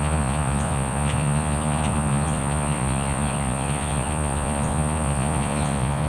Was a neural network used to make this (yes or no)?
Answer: yes